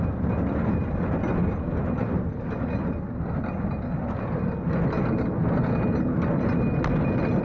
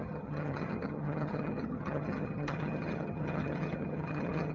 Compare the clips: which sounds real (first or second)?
first